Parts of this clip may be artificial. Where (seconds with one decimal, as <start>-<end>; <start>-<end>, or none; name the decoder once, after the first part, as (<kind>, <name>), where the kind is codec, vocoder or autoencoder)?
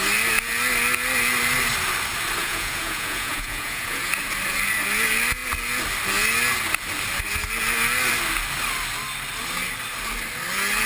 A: 2.4-4.1 (vocoder, Vocos)